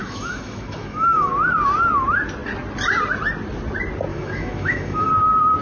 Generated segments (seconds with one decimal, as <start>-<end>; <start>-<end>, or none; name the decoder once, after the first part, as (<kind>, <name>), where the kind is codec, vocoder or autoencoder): 0.0-1.3 (autoencoder, DAC-VAE); 4.1-5.1